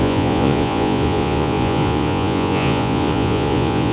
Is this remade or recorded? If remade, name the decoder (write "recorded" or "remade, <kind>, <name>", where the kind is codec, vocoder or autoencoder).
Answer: remade, vocoder, Vocos